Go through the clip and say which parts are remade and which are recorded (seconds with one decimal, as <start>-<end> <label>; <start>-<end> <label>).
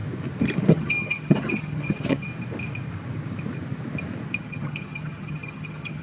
0.0-0.7 recorded; 0.7-2.3 remade; 2.3-4.4 recorded; 4.4-6.0 remade